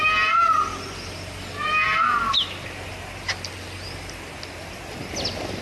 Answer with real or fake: real